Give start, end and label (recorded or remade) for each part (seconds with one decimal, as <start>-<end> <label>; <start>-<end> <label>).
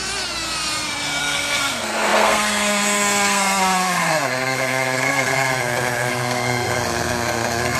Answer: 0.0-1.2 recorded; 1.2-7.8 remade